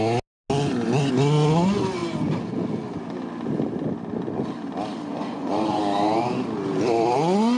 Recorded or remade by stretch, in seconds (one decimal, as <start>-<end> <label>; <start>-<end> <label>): 0.0-5.1 recorded; 5.1-5.8 remade; 5.8-7.6 recorded